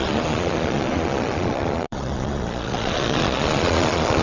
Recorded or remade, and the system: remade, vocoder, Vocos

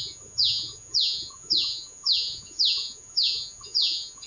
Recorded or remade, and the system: remade, vocoder, Vocos